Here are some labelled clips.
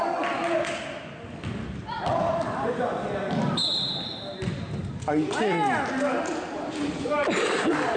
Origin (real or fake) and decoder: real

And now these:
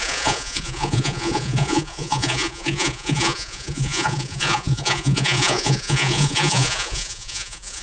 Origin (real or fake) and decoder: fake, vocoder, Vocos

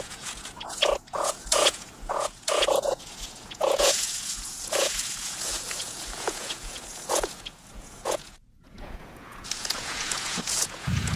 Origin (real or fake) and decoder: fake, vocoder, Vocos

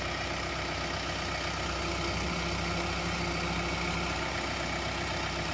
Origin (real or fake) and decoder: real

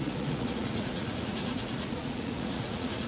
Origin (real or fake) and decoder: fake, vocoder, Vocos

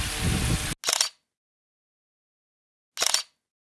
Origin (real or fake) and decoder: real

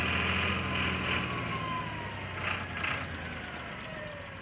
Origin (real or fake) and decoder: real